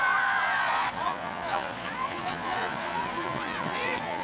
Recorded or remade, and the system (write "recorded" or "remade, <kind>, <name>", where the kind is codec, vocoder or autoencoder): remade, vocoder, Vocos